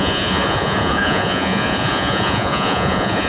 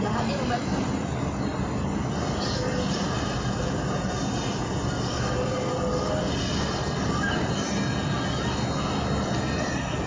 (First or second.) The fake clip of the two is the first